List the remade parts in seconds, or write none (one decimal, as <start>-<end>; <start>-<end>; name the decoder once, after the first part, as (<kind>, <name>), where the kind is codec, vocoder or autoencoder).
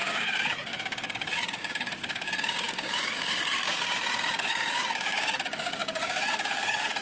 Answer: 0.0-7.0 (codec, DAC)